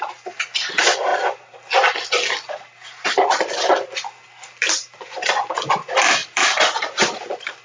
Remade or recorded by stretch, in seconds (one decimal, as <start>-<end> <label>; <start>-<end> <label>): 0.0-7.6 recorded